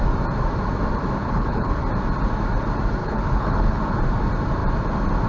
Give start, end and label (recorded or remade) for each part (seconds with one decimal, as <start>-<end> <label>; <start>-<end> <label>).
0.0-1.2 recorded; 1.2-1.8 remade; 1.8-3.0 recorded; 3.0-4.0 remade; 4.0-5.3 recorded